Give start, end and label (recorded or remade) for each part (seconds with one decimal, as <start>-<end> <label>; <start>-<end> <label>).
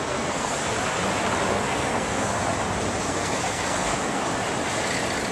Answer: 0.0-0.6 remade; 0.6-1.5 recorded; 1.5-2.4 remade; 2.4-3.0 recorded; 3.0-4.3 remade; 4.3-5.3 recorded